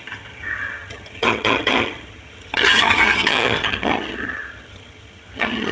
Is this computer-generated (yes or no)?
yes